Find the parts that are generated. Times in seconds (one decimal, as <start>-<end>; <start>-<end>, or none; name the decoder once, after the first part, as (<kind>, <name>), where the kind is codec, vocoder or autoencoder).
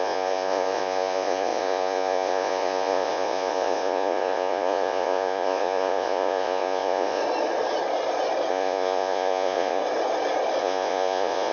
0.0-7.2 (vocoder, Vocos); 8.5-9.8; 10.6-11.5